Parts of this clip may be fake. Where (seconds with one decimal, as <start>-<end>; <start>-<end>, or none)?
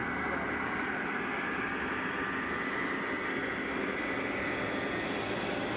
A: 0.0-2.3